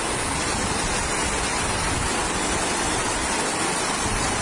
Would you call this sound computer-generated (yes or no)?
no